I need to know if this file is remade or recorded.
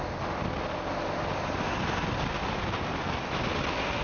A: recorded